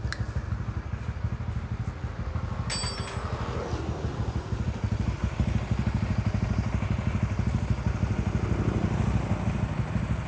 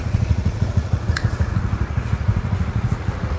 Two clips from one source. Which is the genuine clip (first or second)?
first